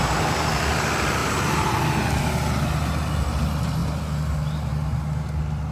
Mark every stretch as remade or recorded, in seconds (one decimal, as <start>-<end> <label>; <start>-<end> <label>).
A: 0.0-1.2 recorded; 1.2-2.2 remade; 2.2-5.7 recorded